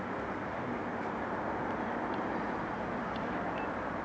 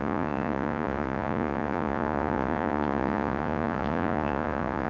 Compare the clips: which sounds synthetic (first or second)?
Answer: second